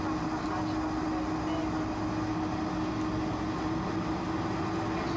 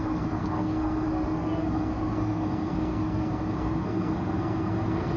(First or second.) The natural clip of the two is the first